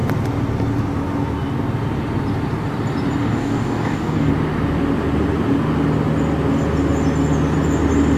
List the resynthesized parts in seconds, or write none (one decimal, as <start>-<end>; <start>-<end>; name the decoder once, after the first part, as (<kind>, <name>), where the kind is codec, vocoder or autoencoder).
3.2-4.3 (codec, DAC)